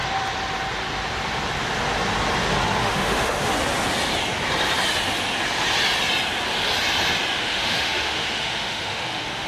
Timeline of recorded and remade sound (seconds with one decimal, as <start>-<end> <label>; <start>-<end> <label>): 0.0-2.8 recorded; 2.8-3.5 remade; 3.5-7.4 recorded; 7.4-9.5 remade